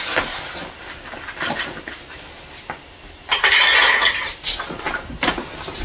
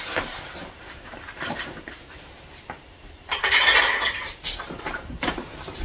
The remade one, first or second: second